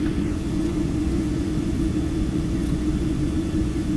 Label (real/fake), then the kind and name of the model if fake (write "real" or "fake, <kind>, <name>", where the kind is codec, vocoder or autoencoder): fake, vocoder, Vocos